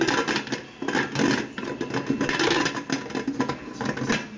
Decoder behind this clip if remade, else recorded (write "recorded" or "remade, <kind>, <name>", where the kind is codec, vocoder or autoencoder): recorded